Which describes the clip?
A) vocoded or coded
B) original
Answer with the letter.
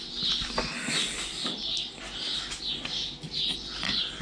B